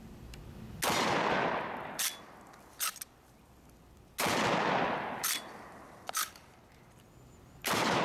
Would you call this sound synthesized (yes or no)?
no